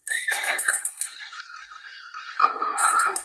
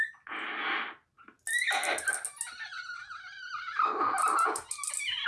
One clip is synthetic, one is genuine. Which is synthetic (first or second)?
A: first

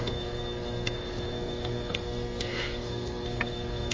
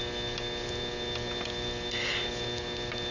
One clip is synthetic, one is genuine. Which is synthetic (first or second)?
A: first